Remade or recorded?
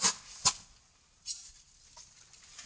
recorded